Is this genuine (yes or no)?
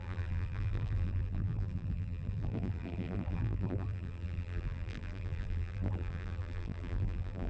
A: no